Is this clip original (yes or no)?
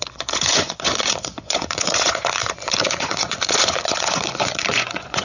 no